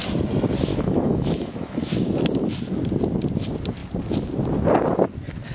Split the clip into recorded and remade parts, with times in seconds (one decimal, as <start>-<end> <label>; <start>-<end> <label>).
0.0-0.7 recorded; 0.7-2.5 remade; 2.5-5.5 recorded